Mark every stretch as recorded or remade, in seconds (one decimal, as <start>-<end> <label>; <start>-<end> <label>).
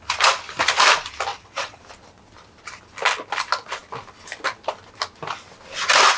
0.0-1.3 recorded; 1.3-1.8 remade; 1.8-6.2 recorded